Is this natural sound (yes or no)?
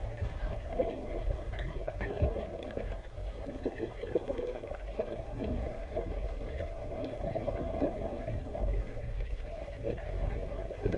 no